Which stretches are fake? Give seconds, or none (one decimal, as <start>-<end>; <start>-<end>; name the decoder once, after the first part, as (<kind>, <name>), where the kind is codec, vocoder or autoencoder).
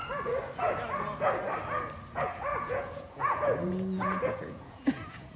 2.1-5.4 (vocoder, Vocos)